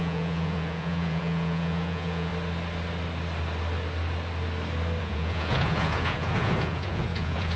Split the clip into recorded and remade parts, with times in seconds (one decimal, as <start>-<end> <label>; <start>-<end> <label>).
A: 0.0-2.3 remade; 2.3-5.0 recorded; 5.0-7.6 remade